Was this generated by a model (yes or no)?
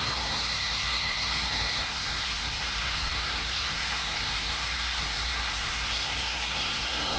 yes